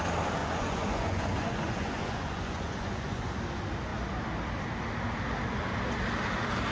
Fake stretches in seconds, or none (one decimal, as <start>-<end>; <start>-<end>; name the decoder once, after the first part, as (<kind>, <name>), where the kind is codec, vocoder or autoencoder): 0.4-3.3 (vocoder, Vocos)

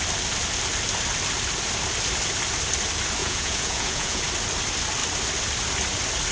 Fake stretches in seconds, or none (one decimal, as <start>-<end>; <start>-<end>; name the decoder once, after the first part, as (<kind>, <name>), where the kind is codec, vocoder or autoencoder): 3.2-4.2 (vocoder, Vocos)

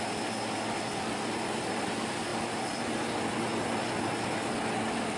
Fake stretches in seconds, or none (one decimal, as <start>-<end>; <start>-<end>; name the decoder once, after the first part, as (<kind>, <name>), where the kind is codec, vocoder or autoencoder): none

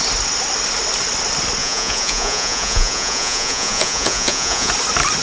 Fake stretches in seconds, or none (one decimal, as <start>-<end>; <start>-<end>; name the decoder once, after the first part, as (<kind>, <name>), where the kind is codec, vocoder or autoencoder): 1.6-4.7 (vocoder, Vocos)

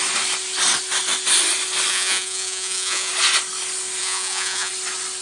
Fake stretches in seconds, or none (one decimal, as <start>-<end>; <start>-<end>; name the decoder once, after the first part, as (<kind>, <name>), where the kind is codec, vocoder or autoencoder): 1.9-3.1 (vocoder, Vocos); 4.0-4.7

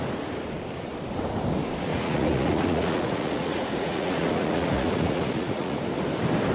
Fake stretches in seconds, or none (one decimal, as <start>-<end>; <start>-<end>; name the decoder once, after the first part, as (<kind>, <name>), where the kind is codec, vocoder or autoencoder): 1.9-5.8 (vocoder, Vocos)